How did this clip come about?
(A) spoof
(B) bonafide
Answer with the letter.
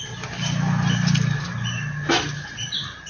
B